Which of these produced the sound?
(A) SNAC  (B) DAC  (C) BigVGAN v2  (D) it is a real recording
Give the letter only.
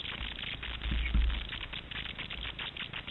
D